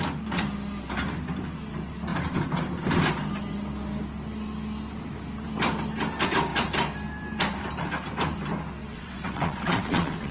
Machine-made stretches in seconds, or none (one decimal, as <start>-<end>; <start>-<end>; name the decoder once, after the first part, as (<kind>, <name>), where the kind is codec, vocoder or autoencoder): 8.8-10.3 (vocoder, WaveNeXt)